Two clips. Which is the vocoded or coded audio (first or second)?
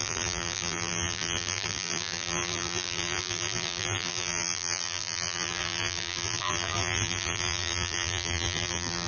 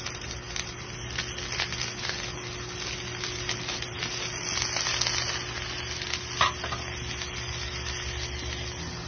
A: first